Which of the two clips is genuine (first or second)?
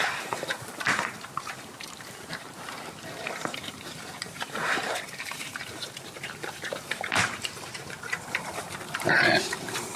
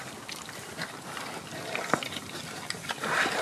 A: second